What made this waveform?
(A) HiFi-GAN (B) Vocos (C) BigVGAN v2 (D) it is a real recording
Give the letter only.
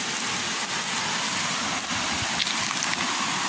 D